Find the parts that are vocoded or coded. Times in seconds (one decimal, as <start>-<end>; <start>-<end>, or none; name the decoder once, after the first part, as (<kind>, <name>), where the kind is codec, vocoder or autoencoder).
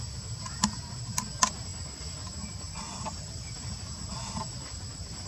none